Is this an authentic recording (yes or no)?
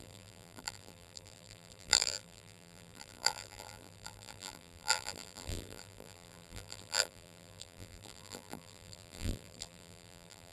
no